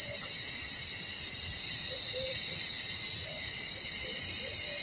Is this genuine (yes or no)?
yes